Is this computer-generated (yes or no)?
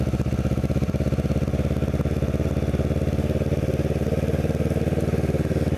no